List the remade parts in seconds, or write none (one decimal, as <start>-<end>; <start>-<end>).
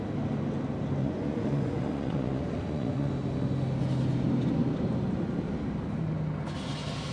1.0-3.1